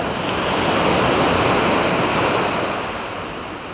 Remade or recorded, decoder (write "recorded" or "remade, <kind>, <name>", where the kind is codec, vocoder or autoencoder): recorded